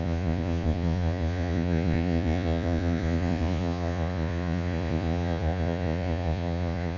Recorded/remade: remade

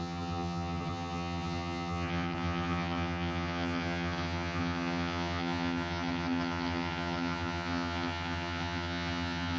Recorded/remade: remade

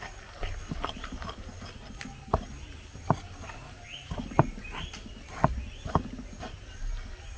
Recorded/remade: recorded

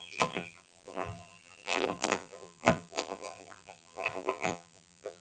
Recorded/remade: remade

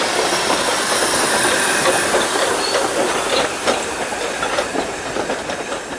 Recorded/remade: recorded